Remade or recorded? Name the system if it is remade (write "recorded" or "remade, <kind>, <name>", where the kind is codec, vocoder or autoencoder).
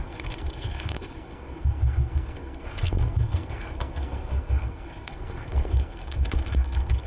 remade, codec, SNAC